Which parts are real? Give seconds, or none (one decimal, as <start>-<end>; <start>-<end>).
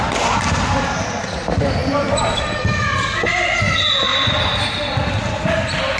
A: 0.0-1.8; 2.4-4.1; 4.9-6.0